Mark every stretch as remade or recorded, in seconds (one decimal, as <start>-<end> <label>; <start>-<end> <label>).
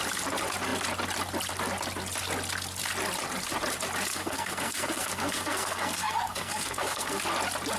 0.0-4.1 recorded; 4.1-7.2 remade; 7.2-7.8 recorded